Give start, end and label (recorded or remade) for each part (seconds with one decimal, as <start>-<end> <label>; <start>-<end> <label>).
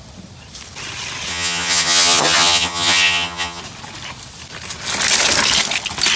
0.0-1.3 recorded; 1.3-3.6 remade; 3.6-6.2 recorded